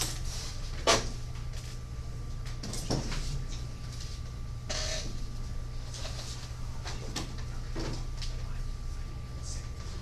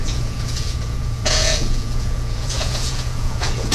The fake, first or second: second